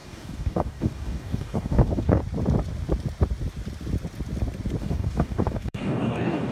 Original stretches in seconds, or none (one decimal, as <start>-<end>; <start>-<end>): 2.2-4.8

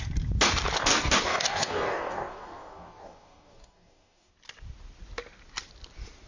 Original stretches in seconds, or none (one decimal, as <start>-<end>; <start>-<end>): 0.0-0.9; 4.3-6.3

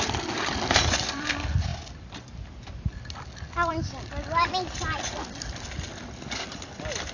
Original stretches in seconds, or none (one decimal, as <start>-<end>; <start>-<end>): 0.0-7.1

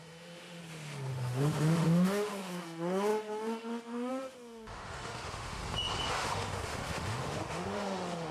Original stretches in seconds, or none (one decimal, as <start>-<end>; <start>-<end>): 0.6-1.1; 5.6-6.1

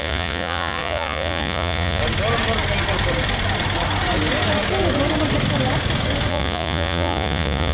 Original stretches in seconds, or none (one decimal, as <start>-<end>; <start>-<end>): 2.0-6.3

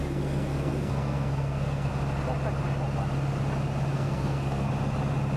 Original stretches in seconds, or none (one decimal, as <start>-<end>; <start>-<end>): 1.9-3.9; 4.7-5.4